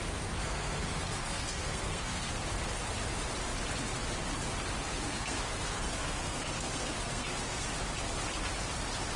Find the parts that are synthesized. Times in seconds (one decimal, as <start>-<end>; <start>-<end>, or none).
0.4-2.3; 4.9-7.7